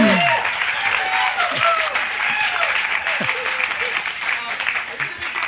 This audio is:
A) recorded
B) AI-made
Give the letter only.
A